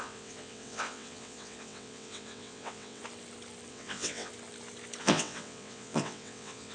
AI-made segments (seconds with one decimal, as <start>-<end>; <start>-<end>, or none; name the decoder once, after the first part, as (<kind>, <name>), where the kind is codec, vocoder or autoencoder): 0.0-3.0 (vocoder, WaveNeXt); 3.7-4.3; 5.0-6.7